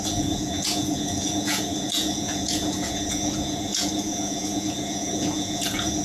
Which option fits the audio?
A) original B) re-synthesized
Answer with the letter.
B